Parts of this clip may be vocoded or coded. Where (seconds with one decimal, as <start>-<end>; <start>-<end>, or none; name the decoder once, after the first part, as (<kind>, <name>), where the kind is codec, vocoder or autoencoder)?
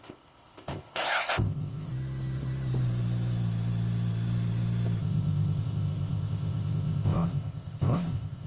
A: 0.0-1.9 (codec, ZipCodec); 5.0-8.5